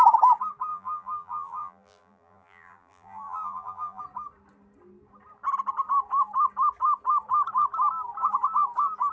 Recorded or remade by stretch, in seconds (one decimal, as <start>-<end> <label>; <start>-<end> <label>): 0.0-0.7 recorded; 0.7-4.0 remade; 4.0-9.1 recorded